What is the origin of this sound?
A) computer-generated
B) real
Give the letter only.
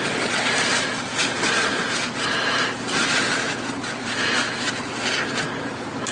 B